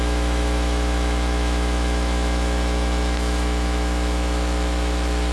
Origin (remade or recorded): remade